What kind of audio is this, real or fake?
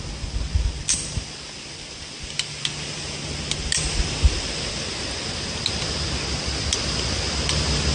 real